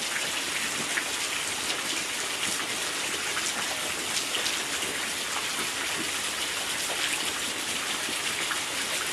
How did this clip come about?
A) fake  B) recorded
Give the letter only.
B